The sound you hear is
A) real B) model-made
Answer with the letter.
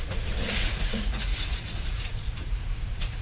B